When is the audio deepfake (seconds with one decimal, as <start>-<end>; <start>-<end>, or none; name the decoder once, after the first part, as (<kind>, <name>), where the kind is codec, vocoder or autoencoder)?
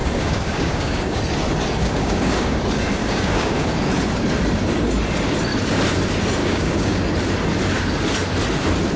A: 0.0-1.2 (codec, DAC); 1.8-2.6; 3.0-3.7; 6.4-7.0